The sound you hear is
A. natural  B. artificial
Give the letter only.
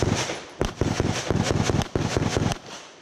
A